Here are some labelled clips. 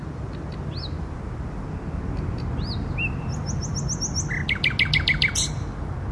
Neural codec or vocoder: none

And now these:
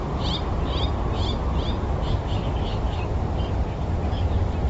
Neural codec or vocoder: none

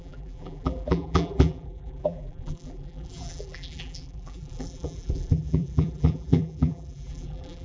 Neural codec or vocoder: vocoder, BigVGAN v2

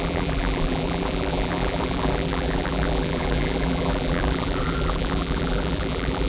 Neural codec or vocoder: vocoder, BigVGAN v2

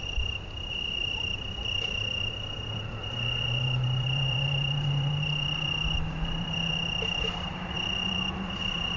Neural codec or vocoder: vocoder, BigVGAN v2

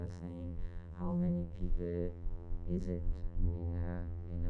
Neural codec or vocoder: vocoder, BigVGAN v2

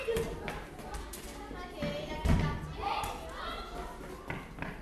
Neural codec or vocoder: none